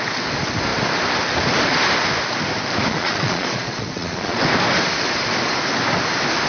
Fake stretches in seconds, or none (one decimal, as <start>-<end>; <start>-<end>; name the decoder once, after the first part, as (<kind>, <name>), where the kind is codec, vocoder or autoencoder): 2.9-4.4 (vocoder, Vocos)